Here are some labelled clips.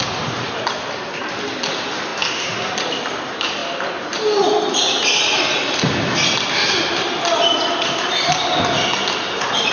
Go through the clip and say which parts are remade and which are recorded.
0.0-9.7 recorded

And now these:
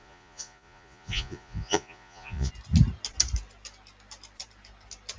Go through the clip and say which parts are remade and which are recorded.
0.0-2.5 remade; 2.5-5.2 recorded

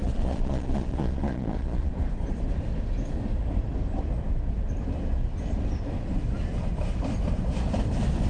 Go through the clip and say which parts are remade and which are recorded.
0.0-1.9 remade; 1.9-8.3 recorded